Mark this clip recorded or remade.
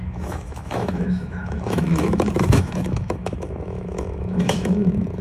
remade